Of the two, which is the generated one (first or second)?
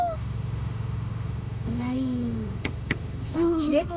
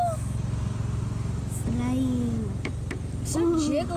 first